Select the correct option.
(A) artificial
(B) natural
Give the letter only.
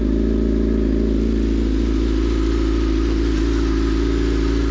B